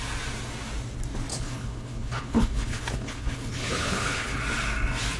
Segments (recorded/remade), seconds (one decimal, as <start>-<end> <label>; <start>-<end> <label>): 0.0-1.3 recorded; 1.3-4.4 remade; 4.4-5.2 recorded